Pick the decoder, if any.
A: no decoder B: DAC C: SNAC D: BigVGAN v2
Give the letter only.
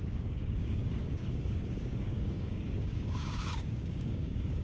B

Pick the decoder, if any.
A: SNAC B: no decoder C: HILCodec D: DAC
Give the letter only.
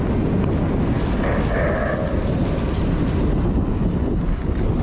B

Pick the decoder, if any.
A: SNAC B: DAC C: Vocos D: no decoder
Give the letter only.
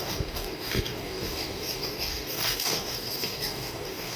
B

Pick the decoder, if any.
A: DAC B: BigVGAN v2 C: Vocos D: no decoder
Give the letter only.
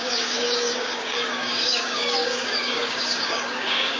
A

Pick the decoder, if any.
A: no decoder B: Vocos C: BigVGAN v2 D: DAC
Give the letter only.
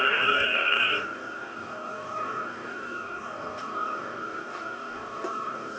D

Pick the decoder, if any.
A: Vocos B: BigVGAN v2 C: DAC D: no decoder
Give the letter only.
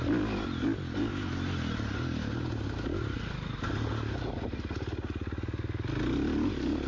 D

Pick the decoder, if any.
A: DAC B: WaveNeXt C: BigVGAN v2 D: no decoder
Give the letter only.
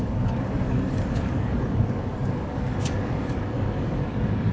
A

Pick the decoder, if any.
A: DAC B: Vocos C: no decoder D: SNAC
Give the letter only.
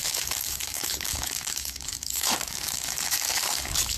A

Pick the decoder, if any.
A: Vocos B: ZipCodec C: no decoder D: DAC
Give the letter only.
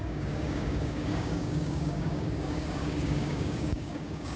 D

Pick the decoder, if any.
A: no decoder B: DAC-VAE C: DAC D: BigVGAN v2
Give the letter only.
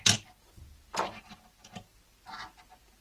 A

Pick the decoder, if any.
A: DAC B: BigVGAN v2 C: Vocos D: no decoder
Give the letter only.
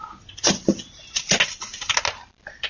D